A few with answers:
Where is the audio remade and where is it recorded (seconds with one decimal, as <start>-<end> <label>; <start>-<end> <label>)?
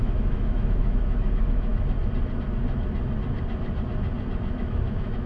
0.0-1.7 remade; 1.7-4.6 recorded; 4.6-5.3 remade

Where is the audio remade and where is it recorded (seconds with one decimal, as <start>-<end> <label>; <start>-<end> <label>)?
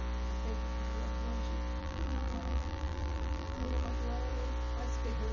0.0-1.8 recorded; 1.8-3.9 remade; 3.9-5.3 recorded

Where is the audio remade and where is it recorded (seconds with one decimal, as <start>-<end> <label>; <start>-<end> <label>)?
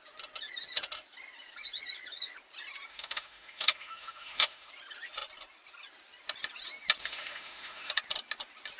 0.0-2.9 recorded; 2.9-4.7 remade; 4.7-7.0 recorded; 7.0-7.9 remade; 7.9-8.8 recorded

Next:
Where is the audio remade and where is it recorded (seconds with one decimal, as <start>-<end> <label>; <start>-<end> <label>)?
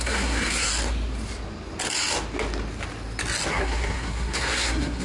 0.0-0.7 remade; 0.7-3.5 recorded; 3.5-5.0 remade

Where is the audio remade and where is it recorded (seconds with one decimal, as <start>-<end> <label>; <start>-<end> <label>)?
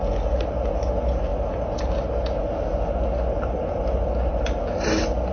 0.0-5.3 recorded